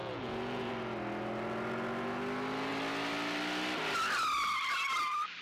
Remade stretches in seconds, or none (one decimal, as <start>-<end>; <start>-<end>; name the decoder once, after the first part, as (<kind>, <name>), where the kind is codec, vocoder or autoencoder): 0.0-0.7 (vocoder, Vocos)